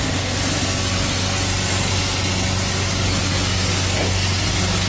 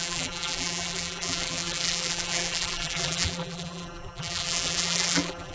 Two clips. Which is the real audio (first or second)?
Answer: first